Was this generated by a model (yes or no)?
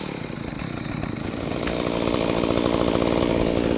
no